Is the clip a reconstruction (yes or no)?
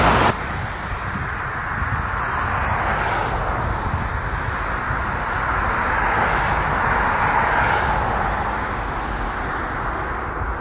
no